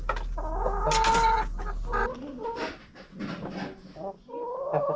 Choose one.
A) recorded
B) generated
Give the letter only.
A